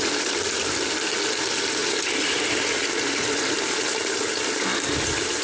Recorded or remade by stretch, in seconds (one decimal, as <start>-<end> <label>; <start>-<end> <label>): 0.0-5.4 recorded